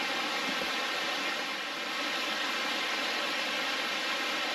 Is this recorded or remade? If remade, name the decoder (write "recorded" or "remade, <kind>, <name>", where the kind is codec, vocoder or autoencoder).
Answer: recorded